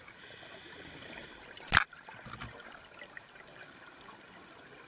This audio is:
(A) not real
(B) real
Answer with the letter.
B